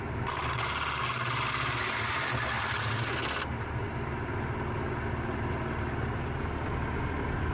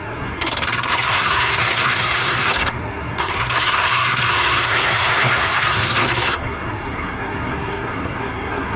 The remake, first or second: second